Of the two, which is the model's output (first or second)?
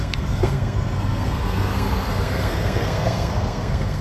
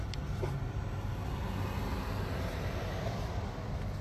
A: first